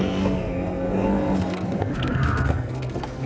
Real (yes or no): no